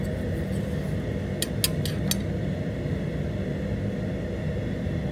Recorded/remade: recorded